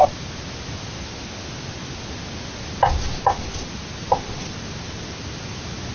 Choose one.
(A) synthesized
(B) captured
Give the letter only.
B